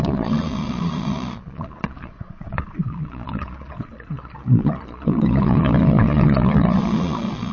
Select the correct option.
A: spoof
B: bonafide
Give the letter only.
A